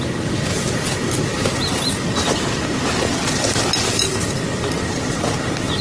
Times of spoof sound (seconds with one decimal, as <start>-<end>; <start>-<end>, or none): 1.3-1.9